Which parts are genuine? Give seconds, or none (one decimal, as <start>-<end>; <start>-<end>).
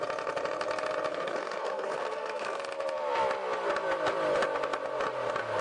0.0-1.1; 2.6-5.6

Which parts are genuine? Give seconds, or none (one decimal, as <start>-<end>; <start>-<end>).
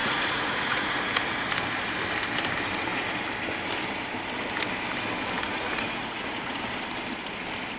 1.1-5.5; 6.6-7.8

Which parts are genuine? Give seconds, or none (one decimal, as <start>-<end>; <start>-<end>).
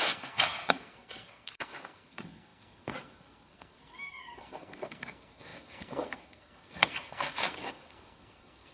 none